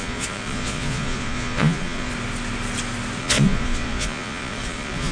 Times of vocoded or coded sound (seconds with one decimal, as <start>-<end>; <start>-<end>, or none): 0.0-2.1; 3.2-5.1